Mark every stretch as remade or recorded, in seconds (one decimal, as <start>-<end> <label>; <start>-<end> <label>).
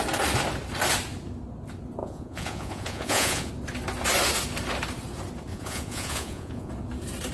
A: 0.0-2.0 recorded; 2.0-3.5 remade; 3.5-5.5 recorded; 5.5-6.7 remade; 6.7-7.3 recorded